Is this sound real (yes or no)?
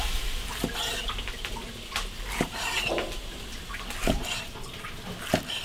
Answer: yes